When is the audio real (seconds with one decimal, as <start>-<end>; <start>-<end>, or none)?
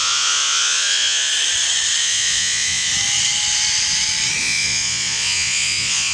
1.3-2.0; 2.9-4.4